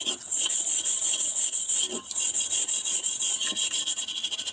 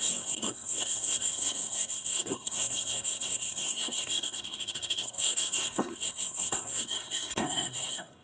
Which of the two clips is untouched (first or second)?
first